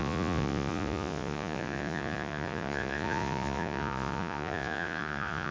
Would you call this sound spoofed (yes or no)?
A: yes